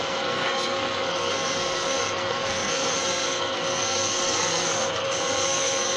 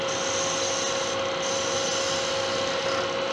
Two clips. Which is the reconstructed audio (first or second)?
first